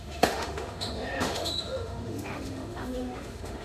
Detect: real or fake fake